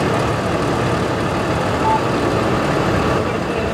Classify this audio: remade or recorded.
recorded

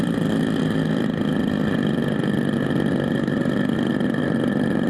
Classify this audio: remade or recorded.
recorded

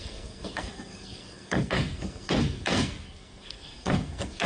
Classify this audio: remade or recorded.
remade